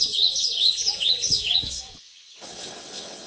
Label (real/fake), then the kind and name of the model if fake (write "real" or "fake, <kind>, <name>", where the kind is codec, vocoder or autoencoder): fake, vocoder, WaveNeXt